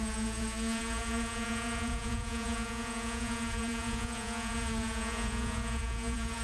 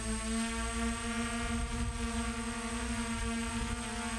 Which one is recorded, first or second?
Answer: second